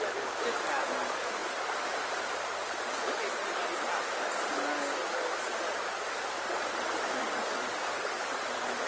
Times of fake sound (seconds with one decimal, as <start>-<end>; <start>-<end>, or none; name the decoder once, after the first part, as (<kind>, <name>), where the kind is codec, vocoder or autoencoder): 7.2-8.2 (codec, DAC)